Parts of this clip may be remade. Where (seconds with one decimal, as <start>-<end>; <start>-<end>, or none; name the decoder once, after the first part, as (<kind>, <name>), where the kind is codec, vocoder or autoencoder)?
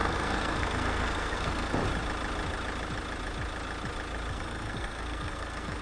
0.0-1.8 (codec, SNAC); 4.3-5.8